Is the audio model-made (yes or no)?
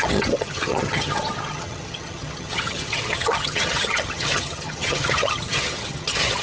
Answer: yes